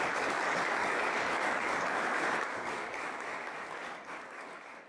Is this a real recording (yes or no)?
no